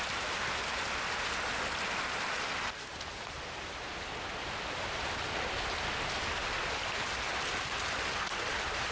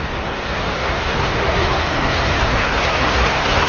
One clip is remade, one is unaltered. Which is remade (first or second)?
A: second